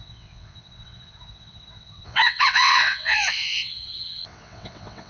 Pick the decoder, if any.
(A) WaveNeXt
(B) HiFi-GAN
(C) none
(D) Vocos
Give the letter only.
A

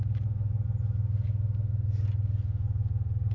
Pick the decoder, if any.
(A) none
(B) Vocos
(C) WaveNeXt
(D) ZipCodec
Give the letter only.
A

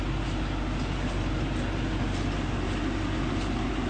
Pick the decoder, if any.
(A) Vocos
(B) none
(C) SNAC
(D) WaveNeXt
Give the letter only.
B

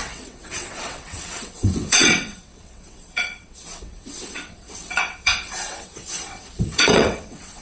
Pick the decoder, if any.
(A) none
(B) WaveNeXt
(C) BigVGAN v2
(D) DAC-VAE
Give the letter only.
B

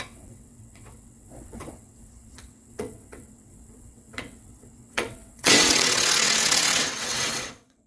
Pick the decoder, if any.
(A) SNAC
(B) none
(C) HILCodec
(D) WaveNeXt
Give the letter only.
D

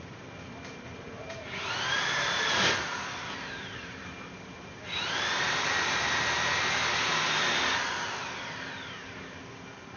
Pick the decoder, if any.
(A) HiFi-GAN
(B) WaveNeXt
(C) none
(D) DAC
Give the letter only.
C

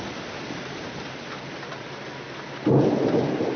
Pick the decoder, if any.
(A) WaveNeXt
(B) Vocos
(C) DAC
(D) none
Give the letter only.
D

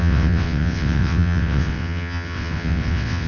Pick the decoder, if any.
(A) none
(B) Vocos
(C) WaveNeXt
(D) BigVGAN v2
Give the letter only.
C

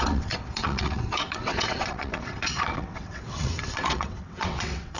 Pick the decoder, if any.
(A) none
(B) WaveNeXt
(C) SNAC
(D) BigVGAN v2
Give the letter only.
B